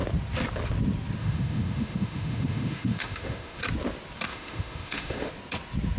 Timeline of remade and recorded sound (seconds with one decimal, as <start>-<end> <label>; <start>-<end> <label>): 0.0-1.2 recorded; 1.2-3.6 remade; 3.6-4.3 recorded; 4.3-5.3 remade; 5.3-6.0 recorded

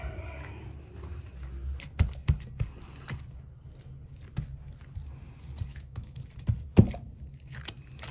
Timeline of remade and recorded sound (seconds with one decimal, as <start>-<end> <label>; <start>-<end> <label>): 0.0-5.7 recorded; 5.7-6.2 remade; 6.2-8.1 recorded

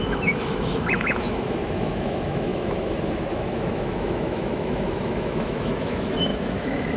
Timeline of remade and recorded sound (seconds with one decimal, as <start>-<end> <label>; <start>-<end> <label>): 0.0-7.0 remade